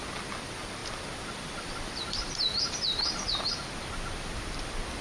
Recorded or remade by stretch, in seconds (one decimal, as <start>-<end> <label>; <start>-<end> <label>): 0.0-5.0 recorded

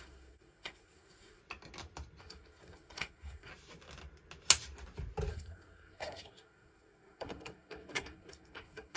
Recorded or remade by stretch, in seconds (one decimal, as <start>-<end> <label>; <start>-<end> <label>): 0.0-1.4 remade; 1.4-2.2 recorded; 2.2-3.5 remade; 3.5-5.3 recorded; 5.3-9.0 remade

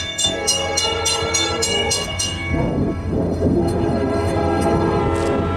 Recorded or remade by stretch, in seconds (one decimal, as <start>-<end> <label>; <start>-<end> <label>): 0.0-5.0 remade; 5.0-5.6 recorded

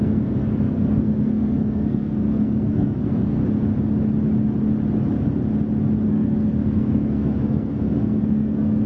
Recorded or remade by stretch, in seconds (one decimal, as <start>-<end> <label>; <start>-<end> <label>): 0.0-3.4 remade; 3.4-6.1 recorded; 6.1-8.9 remade

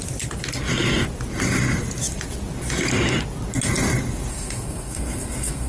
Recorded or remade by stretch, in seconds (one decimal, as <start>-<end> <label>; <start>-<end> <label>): 0.0-4.3 recorded; 4.3-5.7 remade

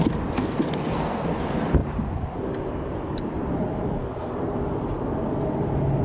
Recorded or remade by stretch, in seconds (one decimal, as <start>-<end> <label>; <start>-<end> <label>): 0.0-0.4 recorded; 0.4-1.3 remade; 1.3-6.0 recorded

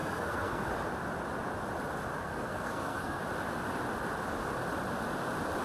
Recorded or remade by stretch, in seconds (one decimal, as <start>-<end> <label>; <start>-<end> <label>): 0.0-0.7 remade; 0.7-2.2 recorded; 2.2-3.2 remade; 3.2-5.6 recorded